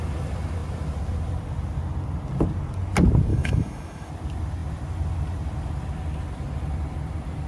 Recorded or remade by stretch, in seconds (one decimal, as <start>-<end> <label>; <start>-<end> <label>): 0.0-3.3 recorded; 3.3-4.1 remade; 4.1-7.5 recorded